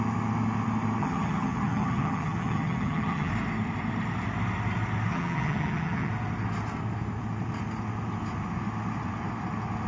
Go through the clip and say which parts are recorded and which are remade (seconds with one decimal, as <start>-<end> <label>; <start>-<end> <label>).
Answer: 0.0-1.0 recorded; 1.0-3.3 remade; 3.3-5.1 recorded; 5.1-6.1 remade; 6.1-9.9 recorded